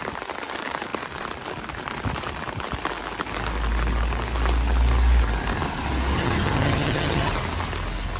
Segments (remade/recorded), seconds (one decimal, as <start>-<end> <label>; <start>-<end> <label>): 0.0-6.2 recorded; 6.2-7.3 remade; 7.3-8.2 recorded